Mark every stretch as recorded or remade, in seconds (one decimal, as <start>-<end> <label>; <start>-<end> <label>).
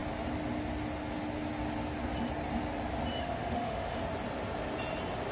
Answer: 0.0-3.2 recorded; 3.2-4.0 remade; 4.0-5.3 recorded